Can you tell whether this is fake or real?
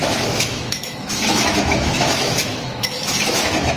fake